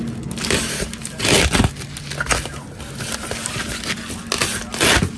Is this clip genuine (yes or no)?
yes